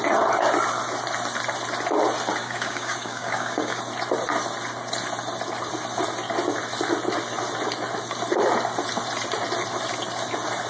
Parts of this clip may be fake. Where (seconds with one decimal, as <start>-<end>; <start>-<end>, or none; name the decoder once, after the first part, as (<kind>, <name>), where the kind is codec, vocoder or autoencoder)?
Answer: 2.4-3.8 (codec, DAC)